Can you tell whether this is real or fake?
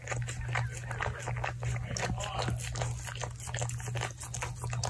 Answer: real